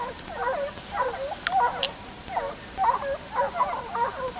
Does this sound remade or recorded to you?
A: recorded